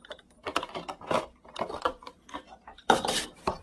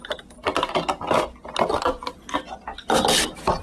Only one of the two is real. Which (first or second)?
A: second